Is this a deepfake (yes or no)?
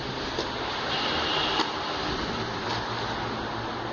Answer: no